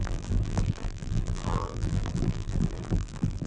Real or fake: fake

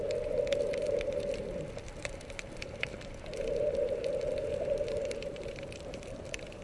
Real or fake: fake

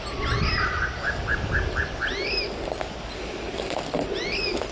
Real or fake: real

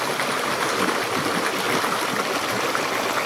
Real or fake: real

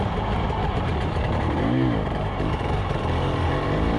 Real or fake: fake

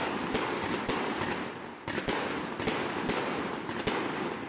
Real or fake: real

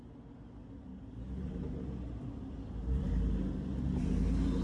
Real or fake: real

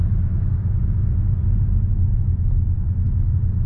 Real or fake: real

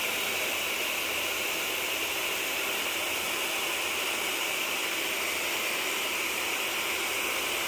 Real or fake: real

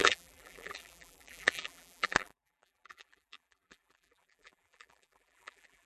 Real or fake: fake